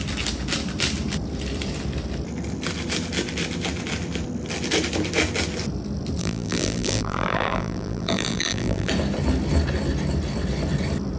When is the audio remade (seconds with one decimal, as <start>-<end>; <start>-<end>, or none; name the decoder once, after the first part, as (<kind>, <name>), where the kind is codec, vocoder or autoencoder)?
6.2-8.9 (vocoder, BigVGAN v2)